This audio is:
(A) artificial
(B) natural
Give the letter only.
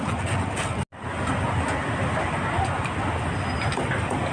B